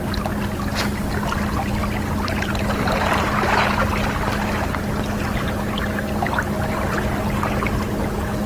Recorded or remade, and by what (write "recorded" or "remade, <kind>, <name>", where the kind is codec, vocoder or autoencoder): recorded